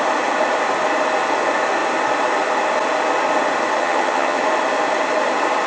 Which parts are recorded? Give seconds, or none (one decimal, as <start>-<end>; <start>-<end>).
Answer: 0.0-3.8; 4.4-5.7

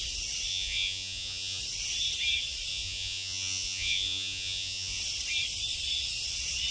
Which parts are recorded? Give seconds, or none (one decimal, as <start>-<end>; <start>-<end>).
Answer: 0.0-0.5; 1.6-2.7; 5.0-6.7

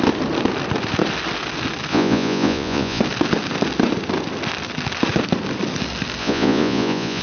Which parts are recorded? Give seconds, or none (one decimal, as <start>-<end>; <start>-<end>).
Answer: 0.0-1.9; 3.0-6.2

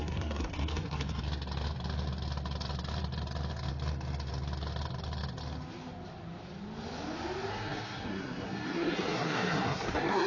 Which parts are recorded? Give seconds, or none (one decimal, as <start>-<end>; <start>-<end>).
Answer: 1.2-7.5